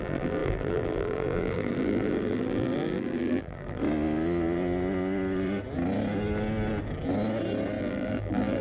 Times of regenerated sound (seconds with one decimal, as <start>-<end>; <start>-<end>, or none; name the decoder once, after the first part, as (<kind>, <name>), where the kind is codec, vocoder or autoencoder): 0.0-3.8 (vocoder, BigVGAN v2); 7.8-8.6